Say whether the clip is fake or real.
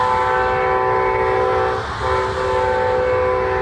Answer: real